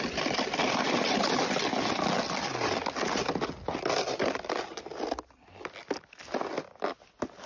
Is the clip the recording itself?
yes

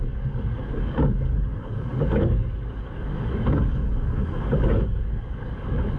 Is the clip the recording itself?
no